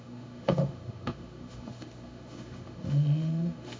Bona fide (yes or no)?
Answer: no